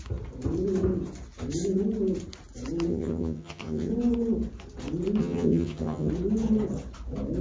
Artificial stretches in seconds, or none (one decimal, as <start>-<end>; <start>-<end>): 2.9-3.9; 5.2-6.1